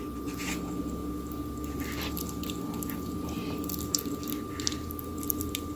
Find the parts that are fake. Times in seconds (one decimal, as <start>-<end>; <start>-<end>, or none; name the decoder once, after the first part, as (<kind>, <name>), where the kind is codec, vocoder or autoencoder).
none